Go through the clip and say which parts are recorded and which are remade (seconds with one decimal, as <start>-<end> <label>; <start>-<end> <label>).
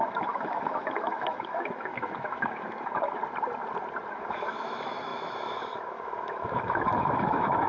0.0-3.2 remade; 3.2-4.1 recorded; 4.1-7.7 remade